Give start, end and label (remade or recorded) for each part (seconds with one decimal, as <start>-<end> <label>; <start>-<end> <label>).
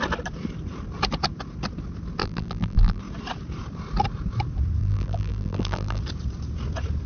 0.0-2.2 recorded; 2.2-3.0 remade; 3.0-4.8 recorded; 4.8-6.0 remade; 6.0-7.1 recorded